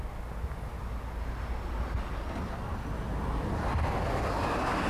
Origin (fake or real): real